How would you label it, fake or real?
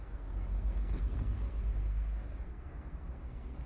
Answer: fake